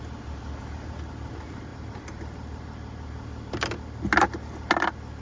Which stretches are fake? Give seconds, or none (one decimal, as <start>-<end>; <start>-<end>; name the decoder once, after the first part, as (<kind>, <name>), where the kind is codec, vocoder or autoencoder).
none